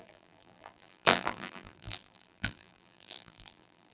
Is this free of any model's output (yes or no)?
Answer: no